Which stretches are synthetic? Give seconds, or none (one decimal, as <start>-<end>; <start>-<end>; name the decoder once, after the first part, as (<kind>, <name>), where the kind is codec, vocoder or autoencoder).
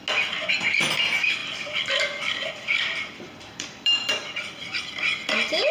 1.4-4.8 (vocoder, BigVGAN v2)